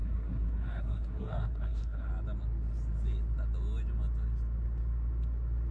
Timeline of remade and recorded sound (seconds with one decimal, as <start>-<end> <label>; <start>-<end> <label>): 0.0-2.1 remade; 2.1-5.7 recorded